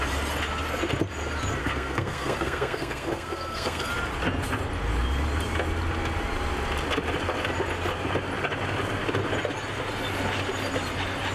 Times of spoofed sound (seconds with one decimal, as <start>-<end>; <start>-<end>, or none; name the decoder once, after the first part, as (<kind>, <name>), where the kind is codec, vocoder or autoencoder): 1.6-3.9 (codec, SNAC)

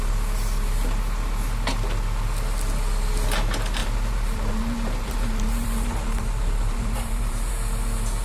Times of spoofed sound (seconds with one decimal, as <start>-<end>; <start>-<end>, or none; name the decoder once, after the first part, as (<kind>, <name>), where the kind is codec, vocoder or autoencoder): 3.8-7.5 (vocoder, BigVGAN v2)

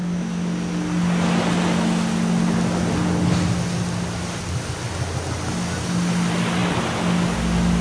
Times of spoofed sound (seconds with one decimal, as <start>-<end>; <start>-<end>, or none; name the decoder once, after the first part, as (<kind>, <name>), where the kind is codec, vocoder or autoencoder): none

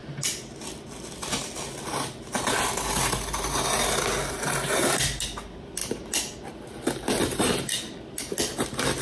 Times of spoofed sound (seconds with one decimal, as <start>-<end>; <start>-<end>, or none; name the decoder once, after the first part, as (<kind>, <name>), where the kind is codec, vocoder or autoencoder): none

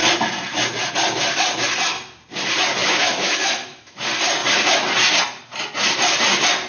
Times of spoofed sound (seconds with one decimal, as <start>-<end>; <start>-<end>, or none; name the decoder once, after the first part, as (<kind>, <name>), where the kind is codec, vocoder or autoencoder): 2.8-4.0 (autoencoder, DAC-VAE)

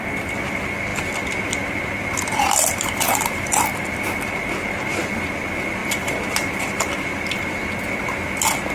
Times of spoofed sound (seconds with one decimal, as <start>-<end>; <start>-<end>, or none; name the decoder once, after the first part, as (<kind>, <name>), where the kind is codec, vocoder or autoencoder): none